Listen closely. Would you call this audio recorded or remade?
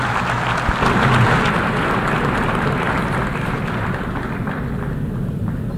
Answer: recorded